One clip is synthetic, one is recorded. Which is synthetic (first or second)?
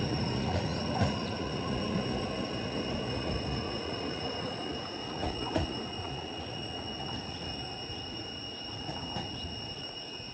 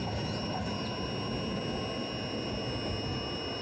first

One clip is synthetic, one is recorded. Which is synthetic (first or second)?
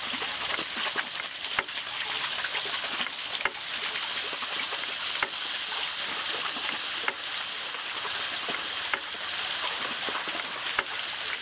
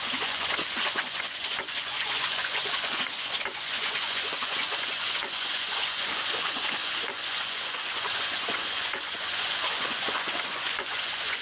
second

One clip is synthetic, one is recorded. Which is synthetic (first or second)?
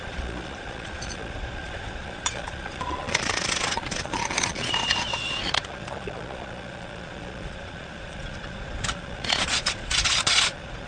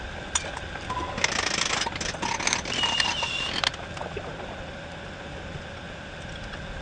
first